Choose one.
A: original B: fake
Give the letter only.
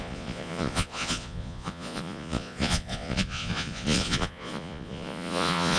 B